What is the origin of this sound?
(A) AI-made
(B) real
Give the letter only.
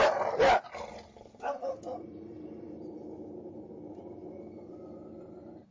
B